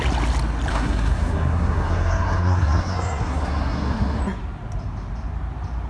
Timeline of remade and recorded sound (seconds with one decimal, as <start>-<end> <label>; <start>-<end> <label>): 0.0-0.7 recorded; 0.7-4.2 remade; 4.2-5.9 recorded